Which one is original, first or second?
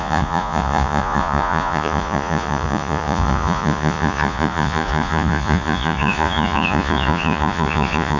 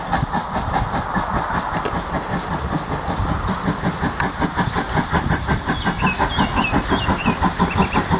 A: second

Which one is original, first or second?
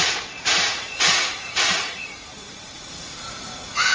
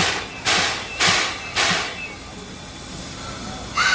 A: second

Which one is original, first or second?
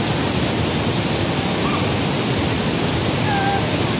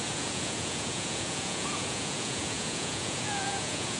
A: first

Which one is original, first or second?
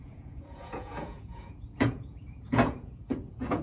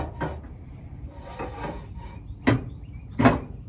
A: second